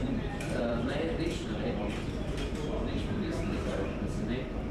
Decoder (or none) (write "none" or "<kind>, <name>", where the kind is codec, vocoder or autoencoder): vocoder, BigVGAN v2